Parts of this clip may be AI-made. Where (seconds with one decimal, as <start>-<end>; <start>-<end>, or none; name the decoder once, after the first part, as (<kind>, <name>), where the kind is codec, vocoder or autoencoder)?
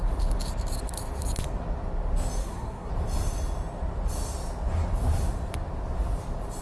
2.4-2.9 (codec, SNAC)